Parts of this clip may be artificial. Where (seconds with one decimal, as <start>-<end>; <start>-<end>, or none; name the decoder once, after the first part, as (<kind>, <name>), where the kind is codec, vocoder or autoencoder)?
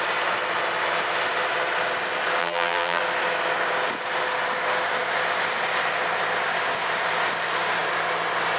2.4-3.0 (vocoder, BigVGAN v2)